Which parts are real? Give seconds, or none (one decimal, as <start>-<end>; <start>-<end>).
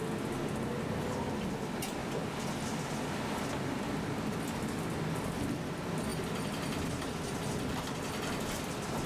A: 0.0-9.1